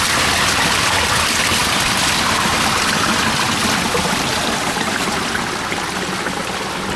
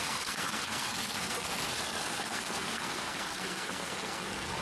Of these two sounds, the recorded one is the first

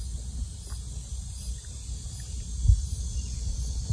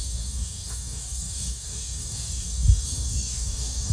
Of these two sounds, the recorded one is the first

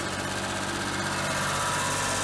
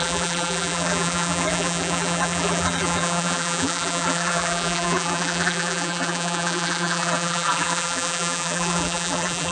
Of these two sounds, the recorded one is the first